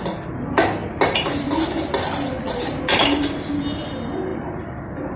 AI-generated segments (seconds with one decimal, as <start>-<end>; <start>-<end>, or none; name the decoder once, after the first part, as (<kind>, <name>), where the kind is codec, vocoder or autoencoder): 4.3-4.8 (vocoder, BigVGAN v2)